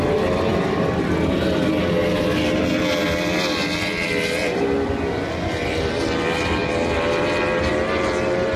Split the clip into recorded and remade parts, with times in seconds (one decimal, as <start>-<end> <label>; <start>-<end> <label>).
0.0-8.6 recorded